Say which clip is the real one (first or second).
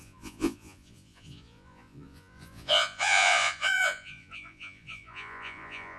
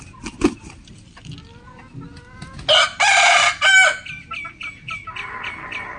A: second